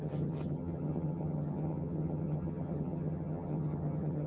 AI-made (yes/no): yes